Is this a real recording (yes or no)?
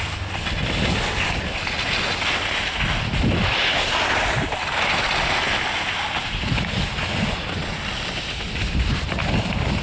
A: yes